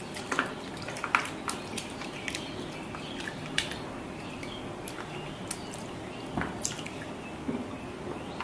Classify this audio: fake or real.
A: real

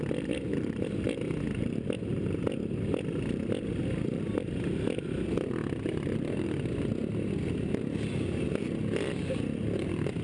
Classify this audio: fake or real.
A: real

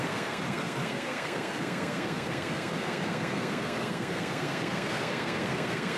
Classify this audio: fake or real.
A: fake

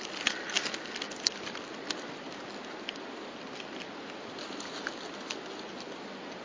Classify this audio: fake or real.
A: real